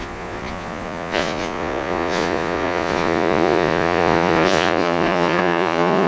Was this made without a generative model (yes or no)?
no